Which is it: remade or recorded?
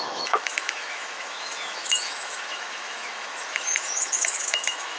remade